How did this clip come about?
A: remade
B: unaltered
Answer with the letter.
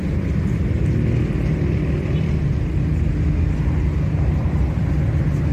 B